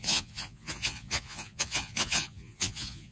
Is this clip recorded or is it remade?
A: remade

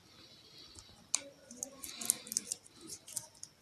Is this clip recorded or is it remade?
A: recorded